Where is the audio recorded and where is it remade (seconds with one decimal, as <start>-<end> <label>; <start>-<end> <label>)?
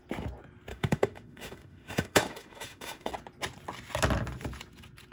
0.0-0.7 recorded; 0.7-3.1 remade; 3.1-5.1 recorded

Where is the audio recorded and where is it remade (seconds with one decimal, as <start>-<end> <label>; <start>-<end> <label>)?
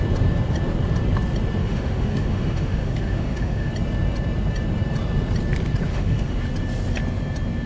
0.0-1.6 recorded; 1.6-3.7 remade; 3.7-5.9 recorded; 5.9-6.4 remade; 6.4-7.7 recorded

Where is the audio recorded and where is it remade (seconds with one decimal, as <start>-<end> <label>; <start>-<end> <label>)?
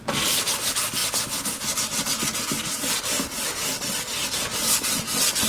0.0-5.5 recorded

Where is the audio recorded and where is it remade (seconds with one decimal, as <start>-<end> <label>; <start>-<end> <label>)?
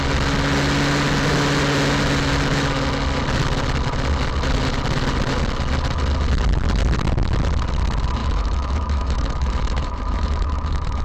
0.0-8.2 recorded; 8.2-11.0 remade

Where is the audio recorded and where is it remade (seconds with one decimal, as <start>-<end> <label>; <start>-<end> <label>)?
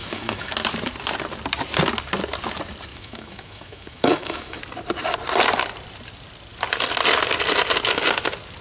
0.0-0.5 remade; 0.5-2.9 recorded; 2.9-4.6 remade; 4.6-8.6 recorded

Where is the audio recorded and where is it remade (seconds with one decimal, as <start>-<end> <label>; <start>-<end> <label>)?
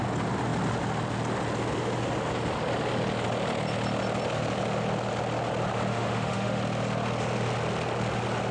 0.0-5.9 recorded; 5.9-6.6 remade; 6.6-8.5 recorded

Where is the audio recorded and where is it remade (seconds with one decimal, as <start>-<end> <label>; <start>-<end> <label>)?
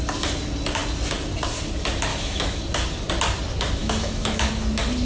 0.0-2.1 recorded; 2.1-2.6 remade; 2.6-3.8 recorded; 3.8-4.5 remade; 4.5-5.0 recorded